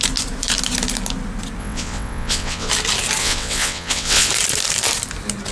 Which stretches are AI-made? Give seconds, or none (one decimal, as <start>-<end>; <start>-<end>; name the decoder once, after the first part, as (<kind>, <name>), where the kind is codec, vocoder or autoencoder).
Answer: 1.6-2.7 (vocoder, WaveNeXt); 3.2-4.3